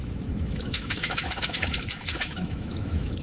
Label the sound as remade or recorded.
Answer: remade